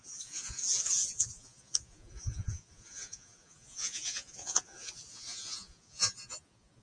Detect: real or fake fake